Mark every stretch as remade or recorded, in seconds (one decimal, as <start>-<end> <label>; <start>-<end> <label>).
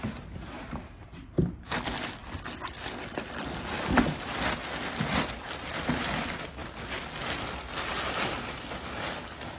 0.0-9.6 recorded